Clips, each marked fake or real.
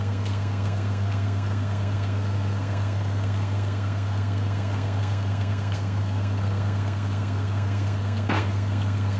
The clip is fake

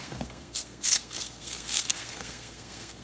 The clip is fake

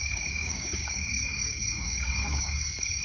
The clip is fake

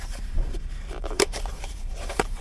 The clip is fake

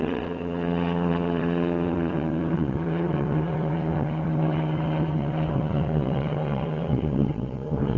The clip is fake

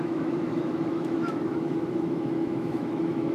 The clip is fake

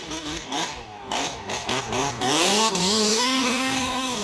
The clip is fake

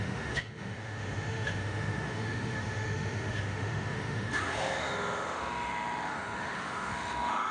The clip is fake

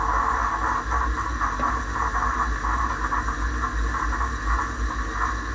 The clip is real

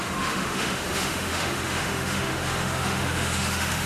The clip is fake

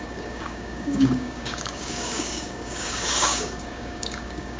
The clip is fake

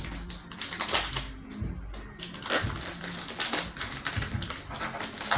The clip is real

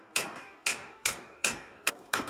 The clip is fake